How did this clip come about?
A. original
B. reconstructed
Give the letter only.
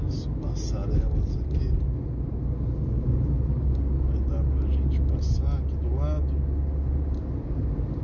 A